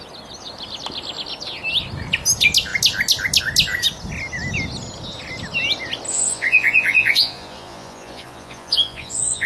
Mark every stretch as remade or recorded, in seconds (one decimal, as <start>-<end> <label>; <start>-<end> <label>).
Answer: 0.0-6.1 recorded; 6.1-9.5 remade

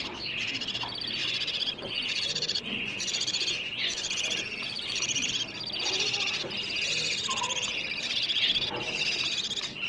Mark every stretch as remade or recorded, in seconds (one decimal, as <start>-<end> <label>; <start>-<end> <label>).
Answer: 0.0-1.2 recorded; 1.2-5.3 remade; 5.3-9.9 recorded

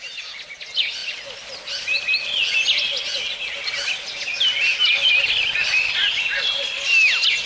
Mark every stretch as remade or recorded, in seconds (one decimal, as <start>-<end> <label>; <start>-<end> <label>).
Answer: 0.0-7.5 recorded

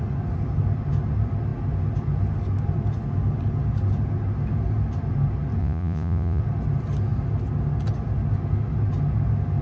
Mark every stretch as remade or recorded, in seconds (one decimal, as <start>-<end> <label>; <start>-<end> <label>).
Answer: 0.0-5.6 recorded; 5.6-6.4 remade; 6.4-9.6 recorded

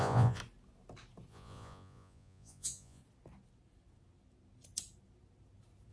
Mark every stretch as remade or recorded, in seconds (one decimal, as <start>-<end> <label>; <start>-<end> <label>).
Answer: 0.0-0.4 remade; 0.4-1.3 recorded; 1.3-3.0 remade; 3.0-5.9 recorded